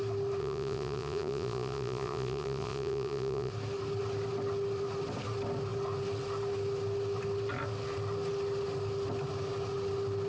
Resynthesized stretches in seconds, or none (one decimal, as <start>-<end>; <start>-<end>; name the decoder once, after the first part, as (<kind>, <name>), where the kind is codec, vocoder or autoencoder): 0.4-3.5 (vocoder, Vocos)